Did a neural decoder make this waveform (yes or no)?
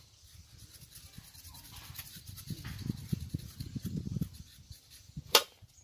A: no